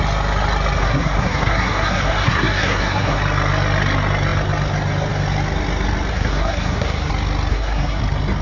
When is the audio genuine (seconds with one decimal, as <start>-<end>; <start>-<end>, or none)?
0.0-0.8; 3.2-6.1; 7.1-7.5; 8.0-8.4